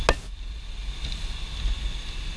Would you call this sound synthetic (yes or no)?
no